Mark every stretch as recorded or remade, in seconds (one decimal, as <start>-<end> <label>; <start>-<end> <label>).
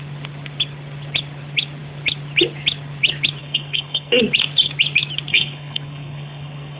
0.0-3.4 recorded; 3.4-4.2 remade; 4.2-5.3 recorded; 5.3-6.8 remade